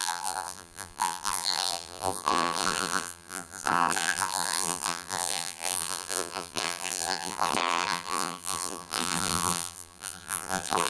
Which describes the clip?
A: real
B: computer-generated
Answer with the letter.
B